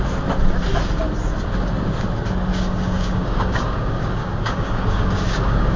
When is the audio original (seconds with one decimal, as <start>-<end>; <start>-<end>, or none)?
0.0-2.5